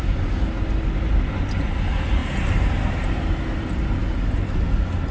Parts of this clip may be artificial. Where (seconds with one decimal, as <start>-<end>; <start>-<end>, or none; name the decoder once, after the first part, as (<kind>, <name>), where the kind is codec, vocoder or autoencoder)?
none